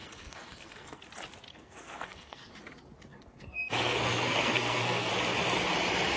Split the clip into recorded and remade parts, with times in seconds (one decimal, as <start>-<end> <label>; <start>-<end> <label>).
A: 0.0-1.0 remade; 1.0-1.5 recorded; 1.5-2.5 remade; 2.5-3.1 recorded; 3.1-5.1 remade; 5.1-6.2 recorded

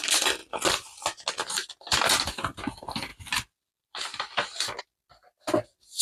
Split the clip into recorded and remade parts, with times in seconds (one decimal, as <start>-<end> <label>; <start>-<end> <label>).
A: 0.0-6.0 recorded